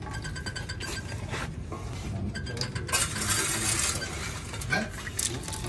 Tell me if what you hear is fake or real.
real